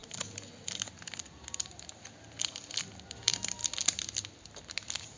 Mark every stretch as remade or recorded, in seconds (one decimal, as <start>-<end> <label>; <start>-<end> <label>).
0.0-5.2 recorded